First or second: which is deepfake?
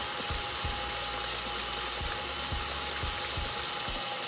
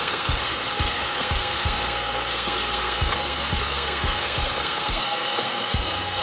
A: second